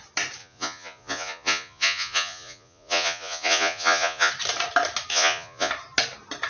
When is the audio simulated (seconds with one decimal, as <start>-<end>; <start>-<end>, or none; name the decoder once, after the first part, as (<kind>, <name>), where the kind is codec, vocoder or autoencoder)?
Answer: 0.4-4.3 (vocoder, Vocos); 5.1-5.7

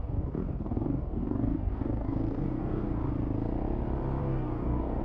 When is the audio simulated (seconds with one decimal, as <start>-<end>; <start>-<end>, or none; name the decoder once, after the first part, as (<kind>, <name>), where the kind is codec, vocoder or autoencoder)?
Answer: 0.0-3.0 (codec, DAC); 4.2-5.0

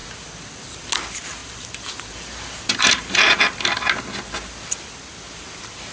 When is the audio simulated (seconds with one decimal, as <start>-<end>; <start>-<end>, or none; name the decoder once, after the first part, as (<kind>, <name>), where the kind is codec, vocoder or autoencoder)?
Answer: 1.4-3.4 (vocoder, BigVGAN v2)